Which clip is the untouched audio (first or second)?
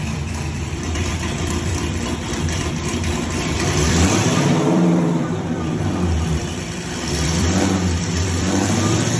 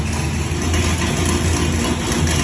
second